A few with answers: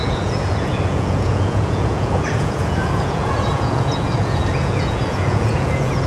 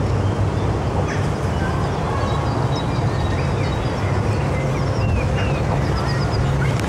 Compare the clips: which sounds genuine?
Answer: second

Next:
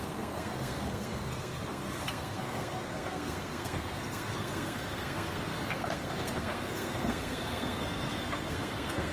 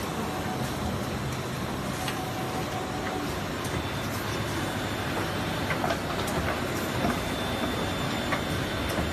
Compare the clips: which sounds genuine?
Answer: second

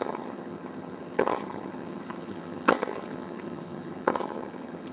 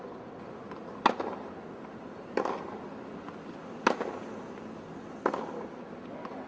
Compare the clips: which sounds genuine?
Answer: second